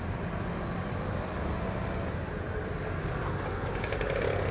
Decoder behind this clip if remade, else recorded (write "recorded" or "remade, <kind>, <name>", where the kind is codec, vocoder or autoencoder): recorded